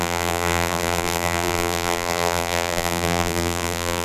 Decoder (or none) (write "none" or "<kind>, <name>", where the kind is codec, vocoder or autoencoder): vocoder, BigVGAN v2